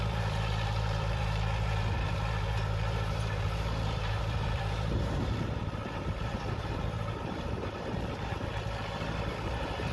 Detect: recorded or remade remade